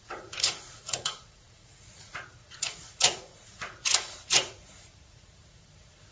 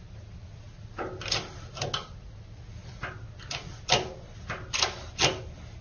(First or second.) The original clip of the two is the second